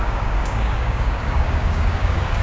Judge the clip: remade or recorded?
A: remade